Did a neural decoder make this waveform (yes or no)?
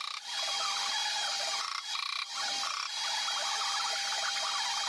no